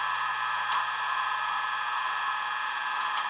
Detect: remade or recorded recorded